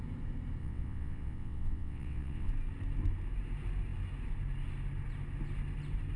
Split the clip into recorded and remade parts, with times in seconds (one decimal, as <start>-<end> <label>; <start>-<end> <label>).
0.0-0.6 recorded; 0.6-2.5 remade; 2.5-6.2 recorded